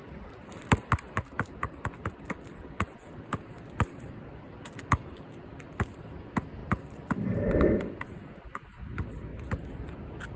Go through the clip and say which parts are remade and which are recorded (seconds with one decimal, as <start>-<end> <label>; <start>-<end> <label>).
0.0-5.1 remade; 5.1-6.6 recorded; 6.6-8.2 remade; 8.2-10.4 recorded